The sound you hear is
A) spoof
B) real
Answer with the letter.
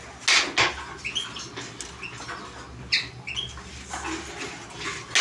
B